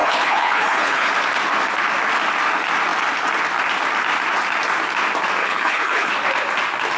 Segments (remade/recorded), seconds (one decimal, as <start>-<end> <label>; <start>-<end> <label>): 0.0-1.1 remade; 1.1-5.4 recorded; 5.4-6.1 remade; 6.1-7.0 recorded